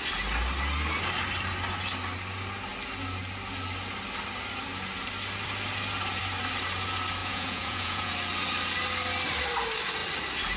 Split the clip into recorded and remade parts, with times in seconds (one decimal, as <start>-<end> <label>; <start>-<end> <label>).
0.0-7.2 recorded; 7.2-8.1 remade; 8.1-10.6 recorded